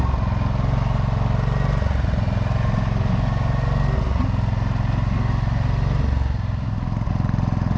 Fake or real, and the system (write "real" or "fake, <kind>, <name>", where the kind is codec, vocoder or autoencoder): real